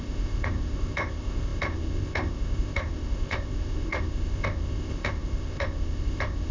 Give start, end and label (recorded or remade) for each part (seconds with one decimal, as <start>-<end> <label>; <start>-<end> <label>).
0.0-6.5 remade